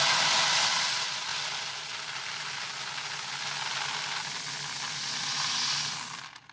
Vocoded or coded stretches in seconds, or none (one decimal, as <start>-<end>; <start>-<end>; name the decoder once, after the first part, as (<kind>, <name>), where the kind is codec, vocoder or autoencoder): none